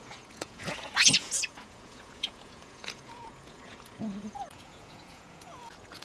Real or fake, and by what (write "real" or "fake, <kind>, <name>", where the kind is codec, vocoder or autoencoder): fake, vocoder, Vocos